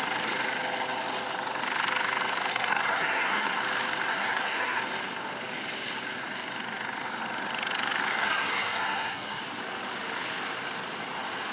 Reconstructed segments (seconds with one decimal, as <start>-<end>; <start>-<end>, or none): 2.5-3.6; 4.1-4.8; 8.1-9.4